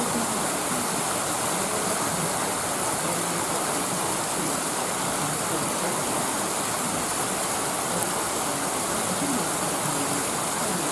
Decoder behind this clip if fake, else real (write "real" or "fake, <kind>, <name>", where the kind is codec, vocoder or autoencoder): real